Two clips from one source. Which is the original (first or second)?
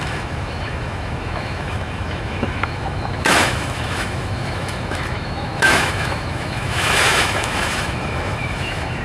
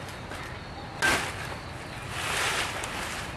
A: second